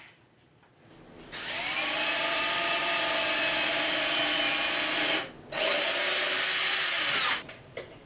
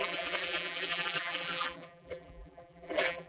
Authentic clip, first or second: first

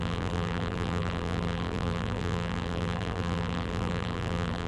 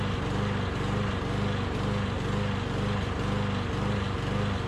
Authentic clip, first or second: second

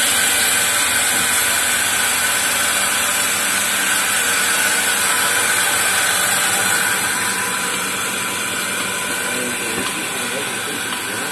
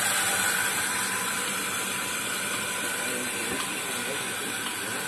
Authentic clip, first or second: first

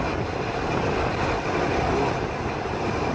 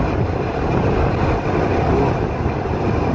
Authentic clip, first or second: first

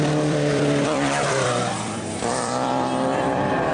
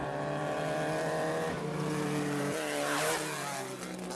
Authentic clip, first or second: second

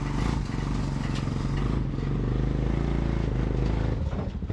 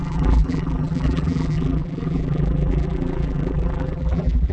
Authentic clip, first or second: first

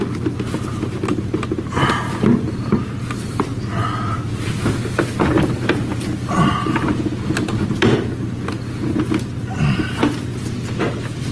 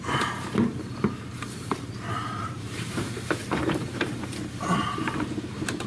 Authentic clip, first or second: first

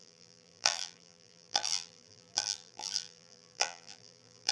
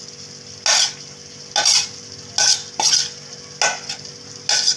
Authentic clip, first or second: second